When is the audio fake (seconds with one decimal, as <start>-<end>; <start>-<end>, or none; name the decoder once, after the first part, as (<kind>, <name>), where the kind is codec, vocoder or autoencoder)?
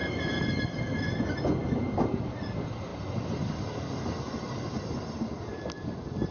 none